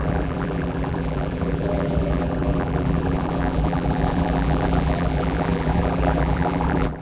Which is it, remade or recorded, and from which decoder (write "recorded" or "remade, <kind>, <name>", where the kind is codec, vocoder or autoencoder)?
remade, vocoder, BigVGAN v2